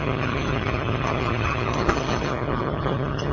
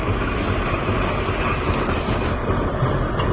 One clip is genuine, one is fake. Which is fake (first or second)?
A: first